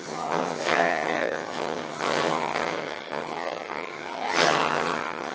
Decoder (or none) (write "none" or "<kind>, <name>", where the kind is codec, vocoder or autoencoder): vocoder, HiFi-GAN